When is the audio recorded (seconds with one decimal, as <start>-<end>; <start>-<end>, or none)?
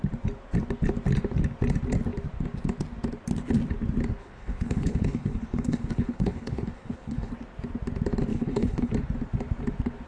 0.0-4.2; 7.3-8.3; 8.9-10.1